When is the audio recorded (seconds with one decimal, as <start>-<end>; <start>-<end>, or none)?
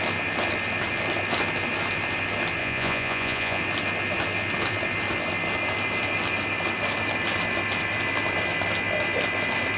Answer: 0.0-2.6; 3.6-9.8